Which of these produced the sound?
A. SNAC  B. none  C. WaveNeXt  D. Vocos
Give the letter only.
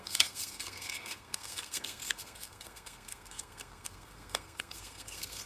A